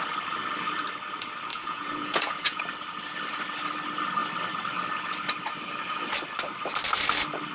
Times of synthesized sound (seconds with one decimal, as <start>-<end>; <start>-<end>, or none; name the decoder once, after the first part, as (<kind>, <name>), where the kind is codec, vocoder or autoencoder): 1.5-2.6 (vocoder, Vocos)